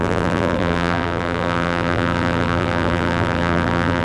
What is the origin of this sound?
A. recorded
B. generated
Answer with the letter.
B